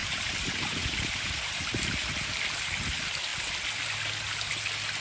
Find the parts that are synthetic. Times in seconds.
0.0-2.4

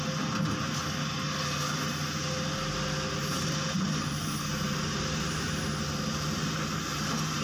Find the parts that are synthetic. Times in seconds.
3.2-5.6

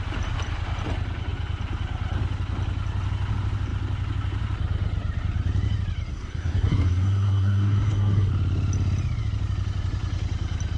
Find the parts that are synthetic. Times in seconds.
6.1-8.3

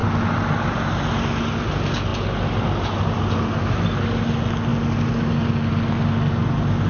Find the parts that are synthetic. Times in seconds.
none

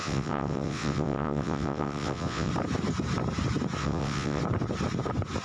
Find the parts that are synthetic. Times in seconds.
0.0-2.5; 3.8-4.4

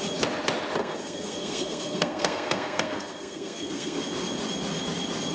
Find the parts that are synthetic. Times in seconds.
0.8-4.0